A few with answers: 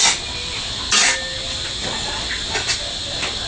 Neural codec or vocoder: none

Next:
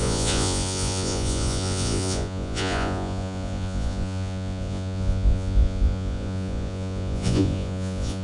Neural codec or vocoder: vocoder, Vocos